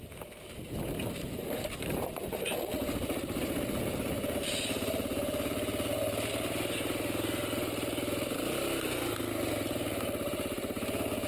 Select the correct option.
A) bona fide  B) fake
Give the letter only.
B